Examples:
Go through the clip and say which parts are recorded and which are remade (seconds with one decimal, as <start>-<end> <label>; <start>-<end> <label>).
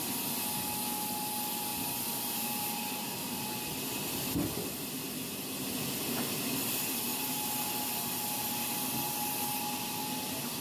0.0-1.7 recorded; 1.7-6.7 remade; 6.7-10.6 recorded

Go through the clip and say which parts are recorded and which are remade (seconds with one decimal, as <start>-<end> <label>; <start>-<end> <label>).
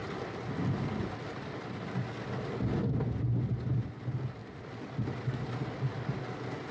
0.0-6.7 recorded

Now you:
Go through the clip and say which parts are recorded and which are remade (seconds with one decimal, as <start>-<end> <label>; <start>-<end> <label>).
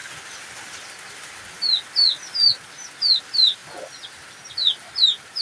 0.0-3.2 recorded; 3.2-5.4 remade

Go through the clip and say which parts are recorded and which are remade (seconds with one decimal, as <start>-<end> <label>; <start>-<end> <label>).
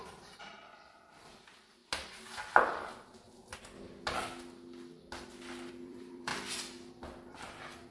0.0-1.8 remade; 1.8-5.7 recorded; 5.7-6.3 remade; 6.3-6.9 recorded; 6.9-7.9 remade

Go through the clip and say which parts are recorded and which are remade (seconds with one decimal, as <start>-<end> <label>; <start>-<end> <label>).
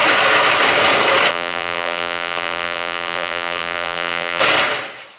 0.0-1.3 recorded; 1.3-4.4 remade; 4.4-5.2 recorded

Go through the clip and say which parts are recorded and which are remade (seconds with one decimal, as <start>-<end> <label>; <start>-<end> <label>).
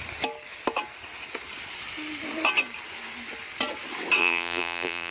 0.0-4.2 recorded; 4.2-5.1 remade